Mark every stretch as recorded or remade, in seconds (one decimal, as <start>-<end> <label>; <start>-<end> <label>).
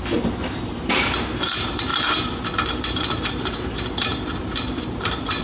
0.0-5.4 remade